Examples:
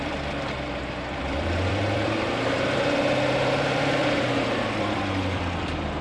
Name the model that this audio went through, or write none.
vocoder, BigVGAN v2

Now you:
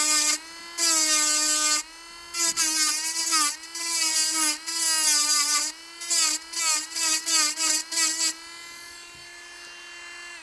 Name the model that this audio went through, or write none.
none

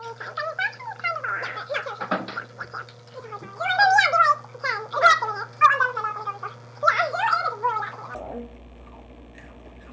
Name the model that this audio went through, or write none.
none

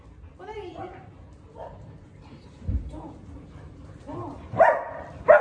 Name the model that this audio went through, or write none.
vocoder, BigVGAN v2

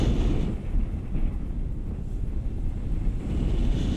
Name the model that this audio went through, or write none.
none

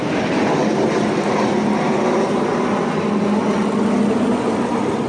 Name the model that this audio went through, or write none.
none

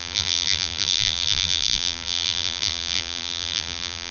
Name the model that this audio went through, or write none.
vocoder, BigVGAN v2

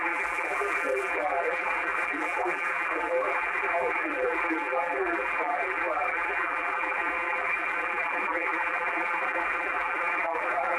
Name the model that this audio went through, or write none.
vocoder, BigVGAN v2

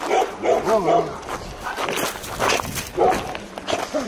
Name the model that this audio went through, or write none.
none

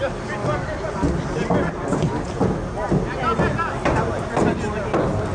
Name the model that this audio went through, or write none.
none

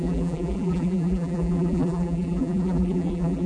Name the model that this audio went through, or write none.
vocoder, BigVGAN v2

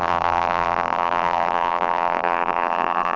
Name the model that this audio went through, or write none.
vocoder, BigVGAN v2